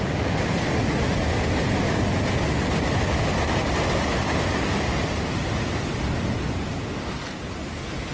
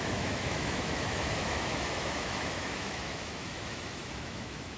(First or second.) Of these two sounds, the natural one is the first